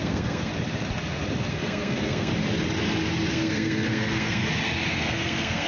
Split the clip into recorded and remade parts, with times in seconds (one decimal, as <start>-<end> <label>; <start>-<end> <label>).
0.0-0.5 remade; 0.5-1.5 recorded; 1.5-2.3 remade; 2.3-3.3 recorded; 3.3-4.4 remade; 4.4-4.9 recorded; 4.9-5.7 remade